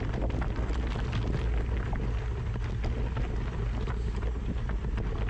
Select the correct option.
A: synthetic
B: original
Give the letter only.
B